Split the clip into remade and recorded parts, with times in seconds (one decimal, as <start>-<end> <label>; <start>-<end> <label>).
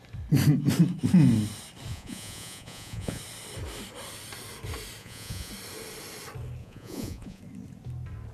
0.0-1.9 recorded; 1.9-3.2 remade; 3.2-5.0 recorded; 5.0-5.5 remade; 5.5-6.6 recorded; 6.6-7.4 remade; 7.4-8.3 recorded